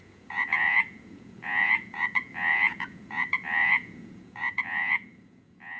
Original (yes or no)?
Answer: no